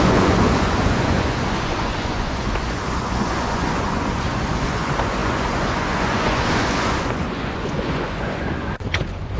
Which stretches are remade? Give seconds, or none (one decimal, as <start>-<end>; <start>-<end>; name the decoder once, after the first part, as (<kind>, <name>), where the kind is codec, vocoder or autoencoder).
0.0-9.4 (vocoder, Vocos)